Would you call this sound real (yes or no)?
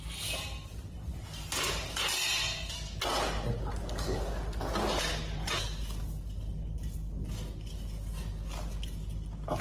yes